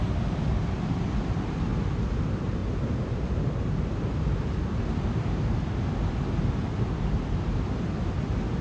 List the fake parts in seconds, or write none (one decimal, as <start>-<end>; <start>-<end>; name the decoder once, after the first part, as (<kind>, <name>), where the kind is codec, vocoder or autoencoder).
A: none